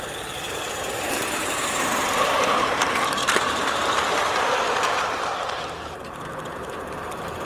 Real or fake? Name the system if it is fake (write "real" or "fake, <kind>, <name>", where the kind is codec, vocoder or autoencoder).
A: fake, vocoder, BigVGAN v2